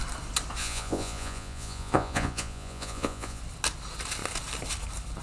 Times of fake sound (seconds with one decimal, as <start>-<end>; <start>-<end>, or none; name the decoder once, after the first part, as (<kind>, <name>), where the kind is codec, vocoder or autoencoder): 0.6-3.4 (vocoder, Vocos)